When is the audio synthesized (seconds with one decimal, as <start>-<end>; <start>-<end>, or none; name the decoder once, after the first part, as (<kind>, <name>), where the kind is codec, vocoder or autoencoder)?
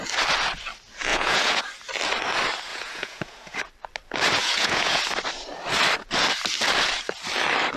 1.1-1.6 (vocoder, Vocos); 2.7-3.6; 4.4-5.0